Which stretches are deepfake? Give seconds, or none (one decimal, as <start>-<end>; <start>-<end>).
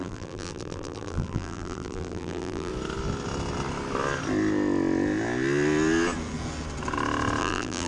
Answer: 0.0-2.7; 7.4-7.9